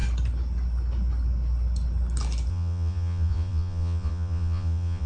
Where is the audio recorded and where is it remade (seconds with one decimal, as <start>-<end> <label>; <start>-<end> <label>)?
0.0-2.5 recorded; 2.5-5.1 remade